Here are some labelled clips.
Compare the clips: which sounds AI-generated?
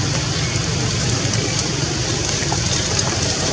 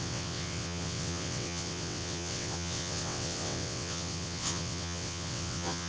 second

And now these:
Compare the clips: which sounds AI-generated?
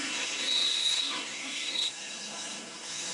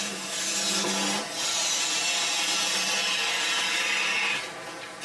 first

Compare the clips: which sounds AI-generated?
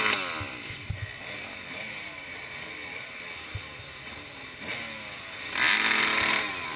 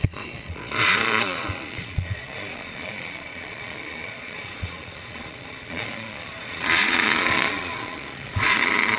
second